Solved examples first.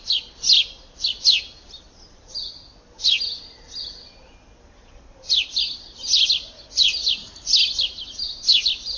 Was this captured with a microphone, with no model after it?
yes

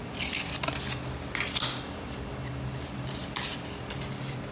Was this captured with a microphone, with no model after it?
yes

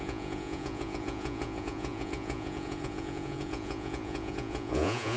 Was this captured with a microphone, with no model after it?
no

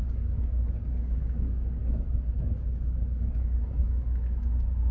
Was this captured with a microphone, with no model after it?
no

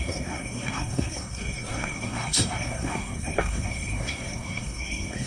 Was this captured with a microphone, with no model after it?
no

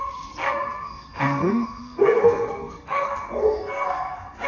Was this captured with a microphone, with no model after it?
no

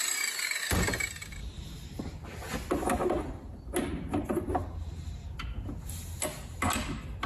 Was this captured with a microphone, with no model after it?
yes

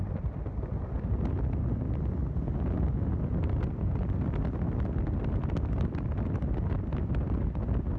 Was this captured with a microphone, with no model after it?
yes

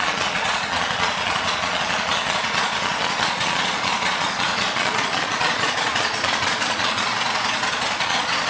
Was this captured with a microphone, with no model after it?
no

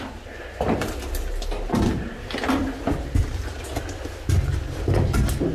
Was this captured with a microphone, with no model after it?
yes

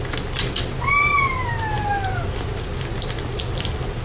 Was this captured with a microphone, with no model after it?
yes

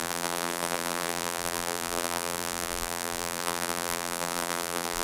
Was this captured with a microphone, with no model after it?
no